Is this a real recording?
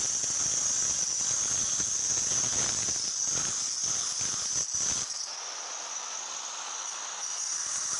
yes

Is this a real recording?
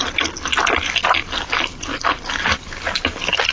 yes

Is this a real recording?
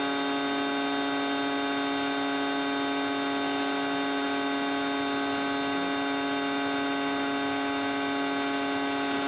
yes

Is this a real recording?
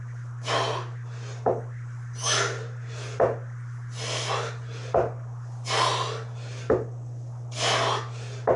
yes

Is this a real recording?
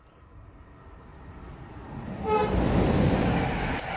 yes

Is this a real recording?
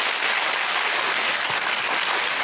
yes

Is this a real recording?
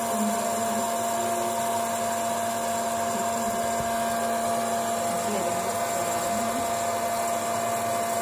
yes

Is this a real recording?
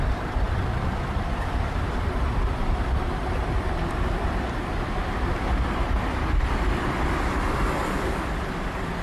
no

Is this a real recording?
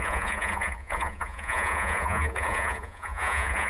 no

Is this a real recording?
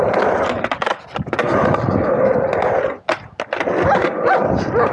yes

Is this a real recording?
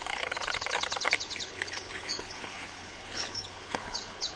no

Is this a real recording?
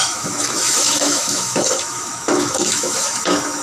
no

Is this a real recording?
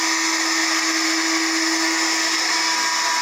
yes